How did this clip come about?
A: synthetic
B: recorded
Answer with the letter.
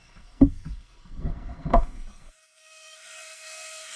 A